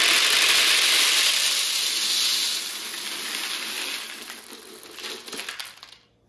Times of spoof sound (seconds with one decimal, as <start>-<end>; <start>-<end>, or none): none